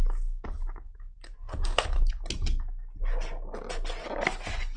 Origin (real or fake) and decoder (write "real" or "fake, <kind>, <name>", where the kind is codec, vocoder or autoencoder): real